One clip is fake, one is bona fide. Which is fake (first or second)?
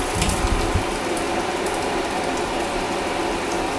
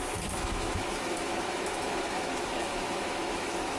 second